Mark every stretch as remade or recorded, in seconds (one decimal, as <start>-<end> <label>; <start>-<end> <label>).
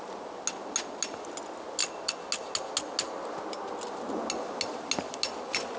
0.0-5.8 recorded